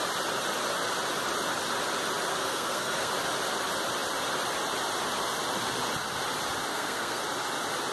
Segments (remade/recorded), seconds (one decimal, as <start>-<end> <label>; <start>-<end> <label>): 0.0-2.3 recorded; 2.3-3.1 remade; 3.1-6.7 recorded; 6.7-7.2 remade; 7.2-7.9 recorded